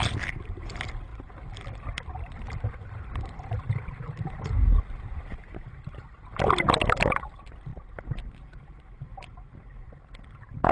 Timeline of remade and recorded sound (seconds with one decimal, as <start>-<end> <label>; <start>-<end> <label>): 0.0-7.7 recorded; 7.7-8.8 remade; 8.8-10.7 recorded